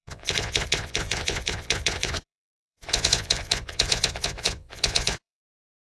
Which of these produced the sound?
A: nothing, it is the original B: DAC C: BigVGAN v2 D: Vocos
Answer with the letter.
D